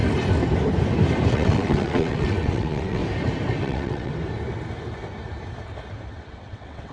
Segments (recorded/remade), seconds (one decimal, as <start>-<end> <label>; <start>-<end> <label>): 0.0-1.3 recorded; 1.3-3.0 remade; 3.0-3.6 recorded; 3.6-4.1 remade; 4.1-6.1 recorded; 6.1-6.9 remade